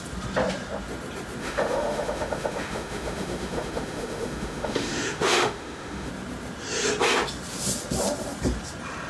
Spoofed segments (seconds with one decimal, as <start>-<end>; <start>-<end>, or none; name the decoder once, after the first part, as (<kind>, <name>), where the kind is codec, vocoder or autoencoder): 1.4-6.1 (autoencoder, DAC-VAE)